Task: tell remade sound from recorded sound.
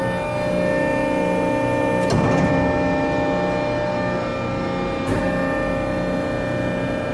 recorded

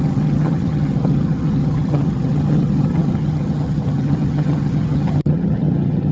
remade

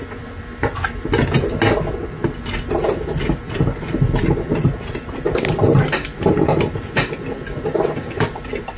recorded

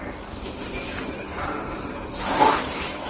remade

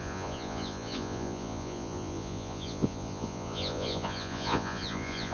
remade